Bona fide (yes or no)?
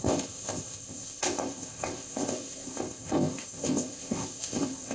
no